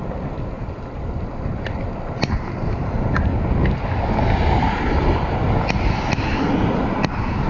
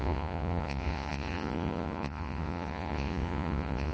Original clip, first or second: first